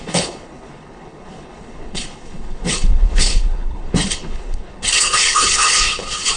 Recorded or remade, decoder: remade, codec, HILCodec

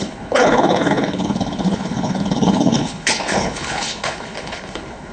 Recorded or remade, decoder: remade, codec, HILCodec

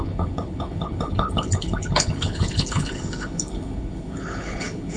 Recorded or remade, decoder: remade, codec, HILCodec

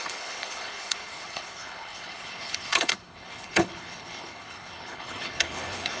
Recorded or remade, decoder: remade, codec, HILCodec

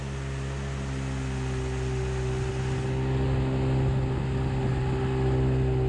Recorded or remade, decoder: recorded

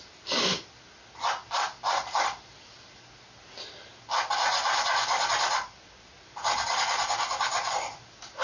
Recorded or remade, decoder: recorded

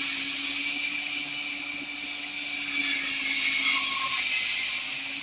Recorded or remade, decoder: recorded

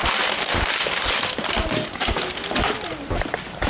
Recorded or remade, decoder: recorded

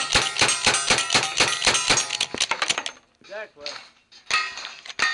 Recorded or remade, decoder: recorded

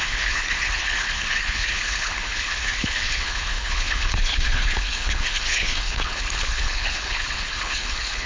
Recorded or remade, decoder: remade, codec, HILCodec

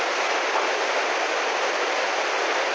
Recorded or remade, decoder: recorded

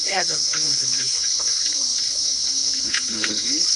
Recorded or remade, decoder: remade, codec, HILCodec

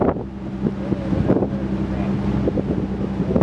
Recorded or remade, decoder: recorded